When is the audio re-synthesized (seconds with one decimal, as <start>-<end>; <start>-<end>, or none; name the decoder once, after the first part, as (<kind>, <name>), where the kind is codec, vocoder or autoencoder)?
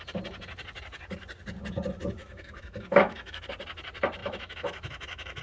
2.2-3.4 (autoencoder, DAC-VAE); 4.2-5.4